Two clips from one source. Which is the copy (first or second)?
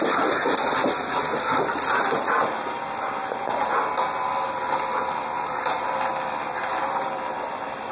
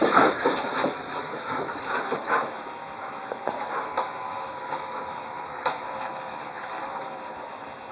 second